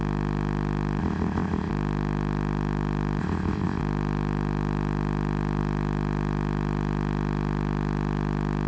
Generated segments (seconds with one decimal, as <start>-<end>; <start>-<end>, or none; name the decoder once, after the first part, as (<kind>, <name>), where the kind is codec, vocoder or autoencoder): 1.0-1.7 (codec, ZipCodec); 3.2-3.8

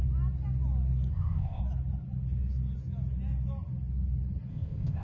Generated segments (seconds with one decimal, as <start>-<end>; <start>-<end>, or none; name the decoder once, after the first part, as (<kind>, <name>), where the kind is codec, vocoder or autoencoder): 1.1-1.6 (codec, ZipCodec); 4.5-5.0

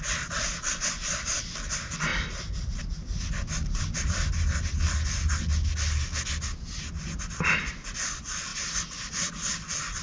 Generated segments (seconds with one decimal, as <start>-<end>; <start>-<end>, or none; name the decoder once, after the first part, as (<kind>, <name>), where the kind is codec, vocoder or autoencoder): none

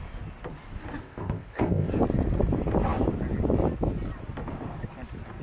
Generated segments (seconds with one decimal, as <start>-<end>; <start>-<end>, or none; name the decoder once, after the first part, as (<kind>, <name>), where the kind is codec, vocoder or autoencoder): 1.0-1.9 (codec, ZipCodec)

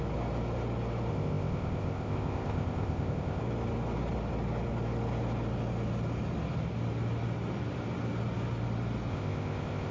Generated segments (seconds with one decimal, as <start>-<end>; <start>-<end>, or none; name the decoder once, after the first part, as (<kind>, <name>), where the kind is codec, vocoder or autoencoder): 1.1-3.4 (codec, ZipCodec); 9.1-9.9

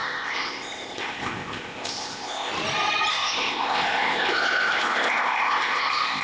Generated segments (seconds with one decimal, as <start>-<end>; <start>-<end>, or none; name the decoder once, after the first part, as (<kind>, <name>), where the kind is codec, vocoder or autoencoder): 0.0-2.5 (codec, ZipCodec); 3.1-6.2